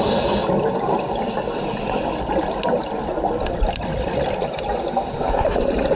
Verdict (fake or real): real